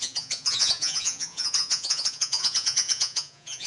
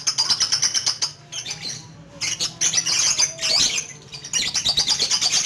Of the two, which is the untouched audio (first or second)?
second